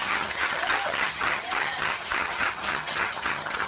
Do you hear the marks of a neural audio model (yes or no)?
yes